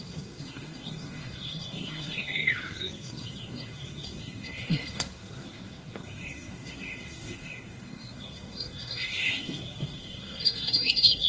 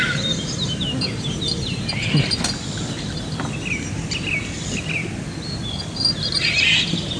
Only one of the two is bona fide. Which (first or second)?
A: second